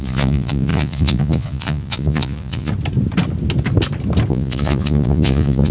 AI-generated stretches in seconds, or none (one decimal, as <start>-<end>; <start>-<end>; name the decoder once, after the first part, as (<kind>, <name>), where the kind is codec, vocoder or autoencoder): 0.0-2.7 (vocoder, Vocos); 4.3-5.7

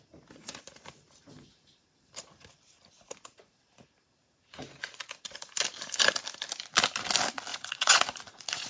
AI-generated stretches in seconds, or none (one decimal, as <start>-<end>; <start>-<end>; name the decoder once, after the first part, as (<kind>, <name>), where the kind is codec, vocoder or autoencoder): 4.2-5.1 (vocoder, Vocos); 7.5-8.7